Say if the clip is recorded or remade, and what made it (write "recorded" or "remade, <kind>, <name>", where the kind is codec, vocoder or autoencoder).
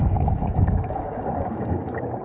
remade, codec, DAC